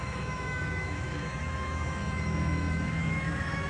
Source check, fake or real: fake